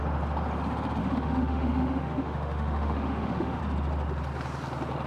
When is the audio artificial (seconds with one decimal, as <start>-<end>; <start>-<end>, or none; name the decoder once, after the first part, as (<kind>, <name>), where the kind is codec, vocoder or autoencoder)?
1.0-3.6 (autoencoder, DAC-VAE)